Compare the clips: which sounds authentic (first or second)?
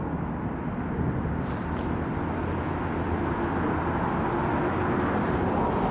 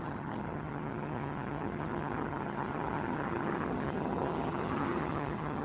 first